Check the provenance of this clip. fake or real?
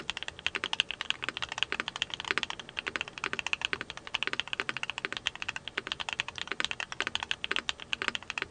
real